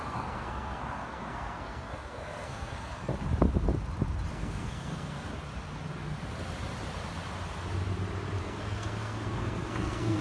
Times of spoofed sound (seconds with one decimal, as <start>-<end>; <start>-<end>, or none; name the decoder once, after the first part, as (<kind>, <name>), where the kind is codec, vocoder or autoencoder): 0.0-3.1 (codec, SNAC); 4.3-5.3; 8.4-10.2